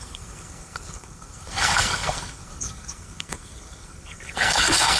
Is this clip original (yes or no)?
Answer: no